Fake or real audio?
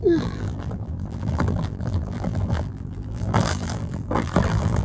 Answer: fake